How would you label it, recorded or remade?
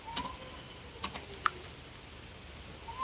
recorded